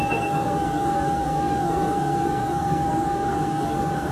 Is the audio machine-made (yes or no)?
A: yes